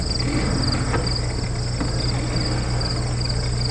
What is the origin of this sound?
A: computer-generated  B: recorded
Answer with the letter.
B